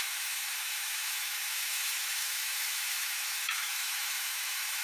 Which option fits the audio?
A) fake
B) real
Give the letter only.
A